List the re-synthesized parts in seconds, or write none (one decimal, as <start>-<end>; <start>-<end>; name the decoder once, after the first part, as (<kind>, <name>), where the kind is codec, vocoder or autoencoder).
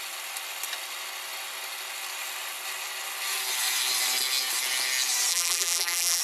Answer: 5.3-6.2 (vocoder, BigVGAN v2)